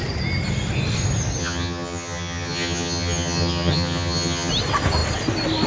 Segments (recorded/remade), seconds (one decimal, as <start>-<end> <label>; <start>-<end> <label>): 0.0-1.4 recorded; 1.4-4.5 remade; 4.5-5.7 recorded